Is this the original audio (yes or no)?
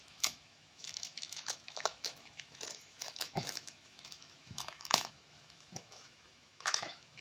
no